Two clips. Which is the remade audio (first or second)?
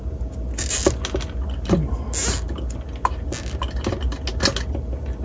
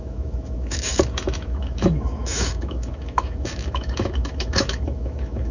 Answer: second